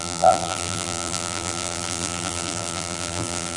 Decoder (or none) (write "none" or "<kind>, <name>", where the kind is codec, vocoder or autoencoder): vocoder, BigVGAN v2